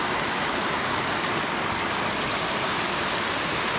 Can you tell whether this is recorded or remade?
recorded